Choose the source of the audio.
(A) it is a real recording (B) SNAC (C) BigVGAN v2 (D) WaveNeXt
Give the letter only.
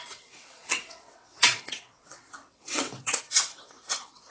D